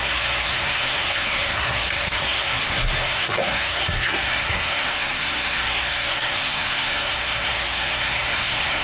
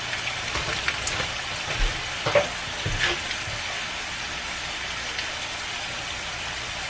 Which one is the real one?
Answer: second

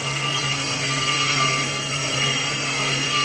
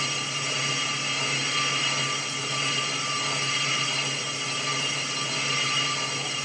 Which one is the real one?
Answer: second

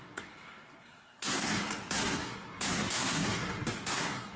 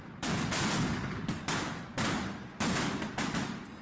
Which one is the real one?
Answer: second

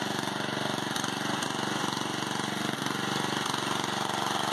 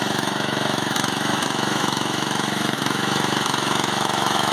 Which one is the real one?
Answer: first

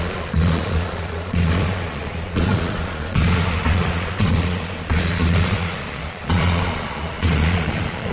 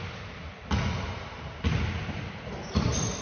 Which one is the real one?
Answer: second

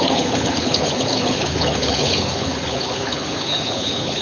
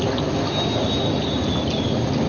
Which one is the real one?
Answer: second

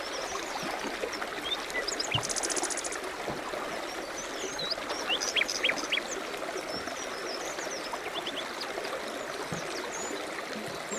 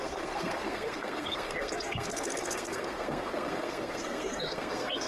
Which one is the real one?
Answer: first